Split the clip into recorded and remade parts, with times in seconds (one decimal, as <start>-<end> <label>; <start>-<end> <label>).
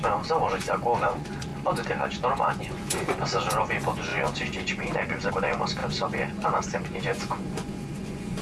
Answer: 0.0-8.4 remade